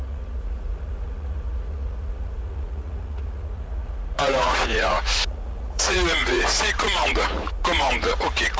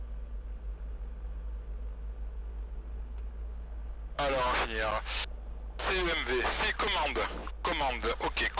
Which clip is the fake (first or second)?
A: first